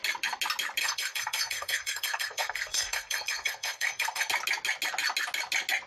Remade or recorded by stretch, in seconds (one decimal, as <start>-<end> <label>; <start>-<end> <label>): 0.0-0.8 recorded; 0.8-4.3 remade; 4.3-5.9 recorded